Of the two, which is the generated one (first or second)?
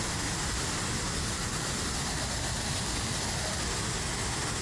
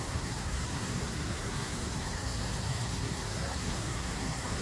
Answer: second